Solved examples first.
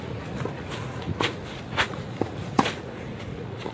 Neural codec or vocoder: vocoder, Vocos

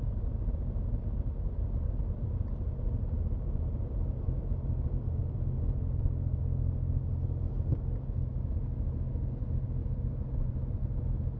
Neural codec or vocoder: none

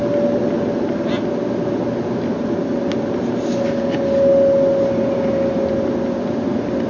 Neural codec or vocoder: none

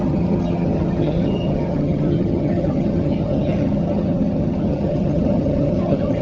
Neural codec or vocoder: vocoder, HiFi-GAN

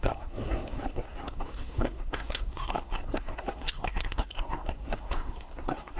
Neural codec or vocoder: codec, SNAC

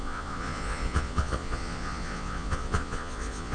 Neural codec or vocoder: vocoder, Vocos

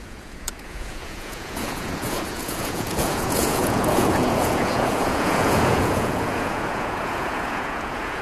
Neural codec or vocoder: vocoder, Vocos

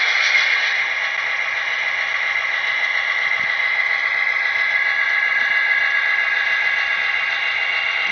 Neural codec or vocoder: none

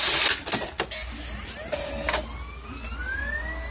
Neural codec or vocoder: none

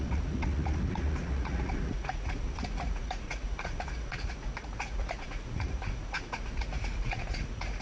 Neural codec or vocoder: vocoder, Vocos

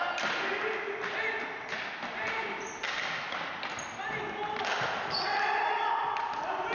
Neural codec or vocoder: none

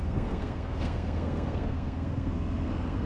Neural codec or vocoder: codec, SNAC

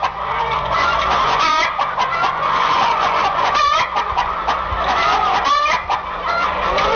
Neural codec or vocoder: vocoder, Vocos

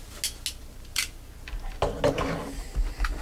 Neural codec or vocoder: none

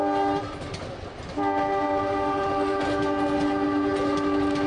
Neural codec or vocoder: none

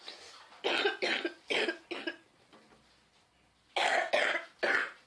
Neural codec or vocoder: none